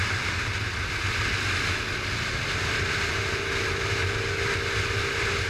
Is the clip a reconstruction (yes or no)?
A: no